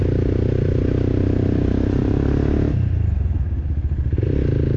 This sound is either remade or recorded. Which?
recorded